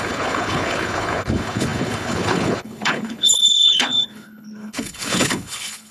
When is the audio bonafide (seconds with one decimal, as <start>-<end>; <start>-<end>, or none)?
none